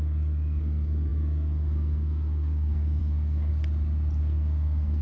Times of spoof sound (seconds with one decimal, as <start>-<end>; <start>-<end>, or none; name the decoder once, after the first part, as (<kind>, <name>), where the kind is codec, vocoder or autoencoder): 0.0-3.5 (codec, SNAC); 4.2-5.0